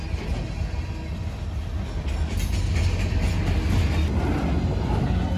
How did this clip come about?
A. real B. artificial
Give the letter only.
A